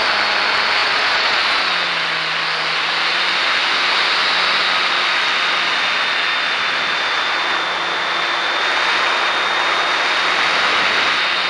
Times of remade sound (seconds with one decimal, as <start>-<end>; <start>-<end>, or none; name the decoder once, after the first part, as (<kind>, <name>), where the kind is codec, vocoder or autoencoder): 0.8-1.6 (vocoder, Vocos)